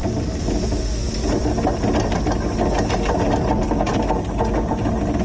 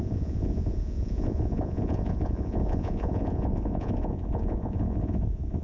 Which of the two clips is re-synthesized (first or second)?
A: second